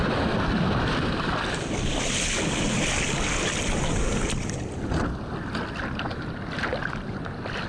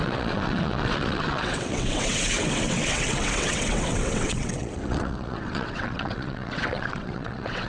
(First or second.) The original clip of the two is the first